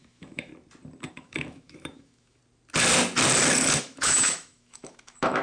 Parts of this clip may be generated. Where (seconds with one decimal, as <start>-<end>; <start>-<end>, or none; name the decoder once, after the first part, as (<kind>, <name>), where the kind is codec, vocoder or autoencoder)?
0.0-0.5 (autoencoder, DAC-VAE); 1.1-2.4; 3.8-5.4